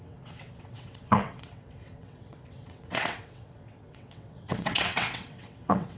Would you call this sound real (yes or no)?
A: no